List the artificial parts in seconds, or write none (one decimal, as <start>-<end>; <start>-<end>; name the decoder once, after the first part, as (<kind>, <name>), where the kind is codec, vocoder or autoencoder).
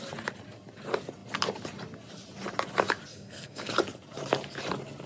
3.1-3.7 (codec, SNAC)